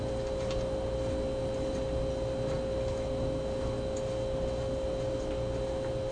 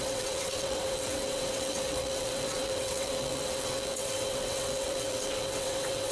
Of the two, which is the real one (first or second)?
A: first